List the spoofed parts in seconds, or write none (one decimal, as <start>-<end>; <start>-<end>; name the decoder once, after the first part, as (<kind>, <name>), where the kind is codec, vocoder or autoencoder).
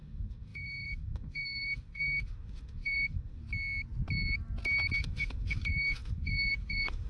0.0-3.4 (autoencoder, DAC-VAE); 5.0-7.1